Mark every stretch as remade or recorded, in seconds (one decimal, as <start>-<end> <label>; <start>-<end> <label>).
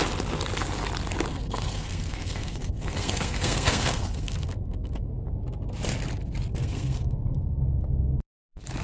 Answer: 0.0-1.3 recorded; 1.3-5.1 remade; 5.1-6.5 recorded; 6.5-7.6 remade; 7.6-8.8 recorded